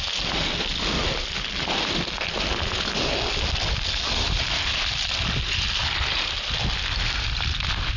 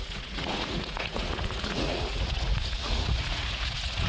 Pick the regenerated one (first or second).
second